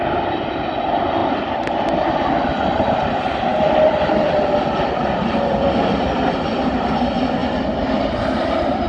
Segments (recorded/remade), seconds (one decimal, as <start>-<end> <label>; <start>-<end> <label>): 0.0-3.5 recorded; 3.5-6.7 remade; 6.7-7.4 recorded; 7.4-8.3 remade; 8.3-8.9 recorded